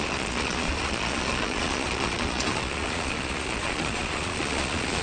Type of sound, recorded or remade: remade